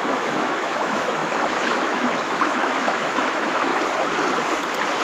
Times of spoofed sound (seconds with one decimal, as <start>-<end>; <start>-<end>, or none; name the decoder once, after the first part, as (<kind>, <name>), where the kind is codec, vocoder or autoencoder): 0.0-3.7 (autoencoder, DAC-VAE)